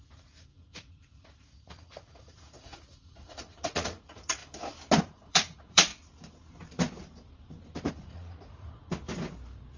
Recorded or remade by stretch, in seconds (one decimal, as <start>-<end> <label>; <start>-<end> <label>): 0.0-4.4 remade; 4.4-5.0 recorded; 5.0-5.9 remade; 5.9-7.9 recorded; 7.9-8.8 remade; 8.8-9.8 recorded